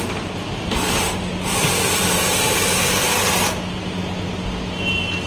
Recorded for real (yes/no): yes